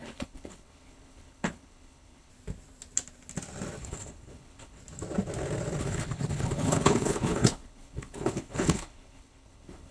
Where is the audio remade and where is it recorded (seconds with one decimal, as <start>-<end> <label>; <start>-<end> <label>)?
0.0-2.3 remade; 2.3-3.8 recorded; 3.8-4.8 remade; 4.8-5.8 recorded; 5.8-9.9 remade